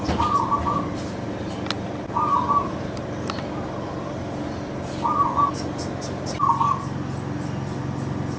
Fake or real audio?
real